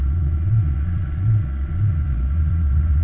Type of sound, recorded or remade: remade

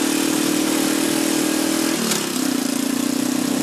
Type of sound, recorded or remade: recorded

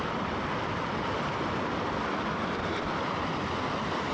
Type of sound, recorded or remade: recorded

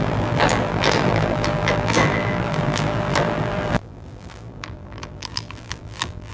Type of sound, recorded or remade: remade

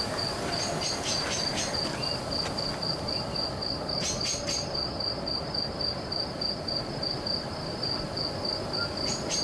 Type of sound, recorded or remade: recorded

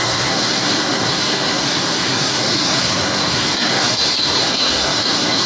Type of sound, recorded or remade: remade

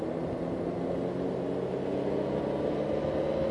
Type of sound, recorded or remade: recorded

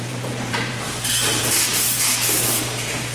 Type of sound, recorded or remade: remade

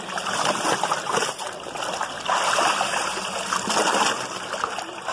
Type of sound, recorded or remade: recorded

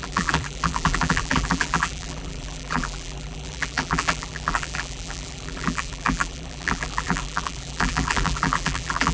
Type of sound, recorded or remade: remade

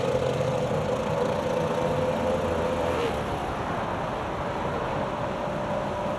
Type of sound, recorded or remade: recorded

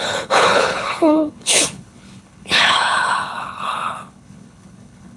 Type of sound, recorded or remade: remade